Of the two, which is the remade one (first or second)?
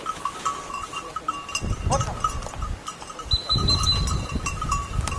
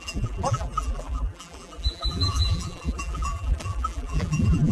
second